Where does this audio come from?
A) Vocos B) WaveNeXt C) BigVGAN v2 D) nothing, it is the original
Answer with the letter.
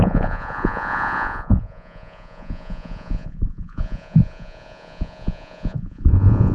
A